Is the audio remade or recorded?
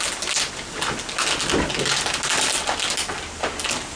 recorded